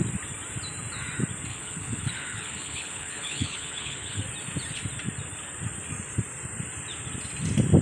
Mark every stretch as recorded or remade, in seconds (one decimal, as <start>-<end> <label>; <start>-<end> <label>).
0.0-1.5 recorded; 1.5-4.2 remade; 4.2-7.8 recorded